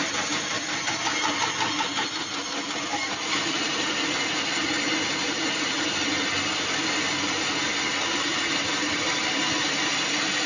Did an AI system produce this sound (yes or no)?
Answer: no